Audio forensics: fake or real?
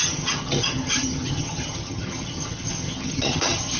fake